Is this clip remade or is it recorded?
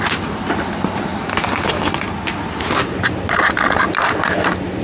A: recorded